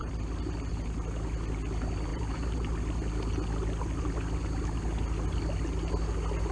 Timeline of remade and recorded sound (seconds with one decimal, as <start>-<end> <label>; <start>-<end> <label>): 0.0-2.1 recorded; 2.1-2.6 remade; 2.6-6.5 recorded